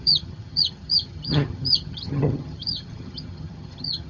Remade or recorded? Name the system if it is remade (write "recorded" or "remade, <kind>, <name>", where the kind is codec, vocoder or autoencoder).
remade, vocoder, HiFi-GAN